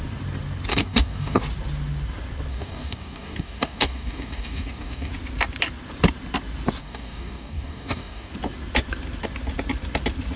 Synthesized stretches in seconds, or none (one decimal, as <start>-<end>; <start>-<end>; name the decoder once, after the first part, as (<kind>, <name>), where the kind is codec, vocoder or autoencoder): 0.7-1.4 (codec, DAC); 2.5-5.1; 6.8-8.3